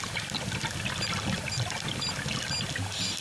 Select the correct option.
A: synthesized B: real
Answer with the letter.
B